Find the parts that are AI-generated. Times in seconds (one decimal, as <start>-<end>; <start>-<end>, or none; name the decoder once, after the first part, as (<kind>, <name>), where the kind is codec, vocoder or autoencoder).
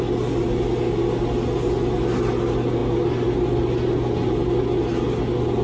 none